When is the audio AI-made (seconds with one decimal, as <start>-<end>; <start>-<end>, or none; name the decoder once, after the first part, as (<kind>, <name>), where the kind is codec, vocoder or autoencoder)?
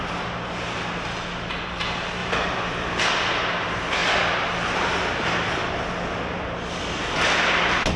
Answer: 2.2-3.0 (vocoder, BigVGAN v2)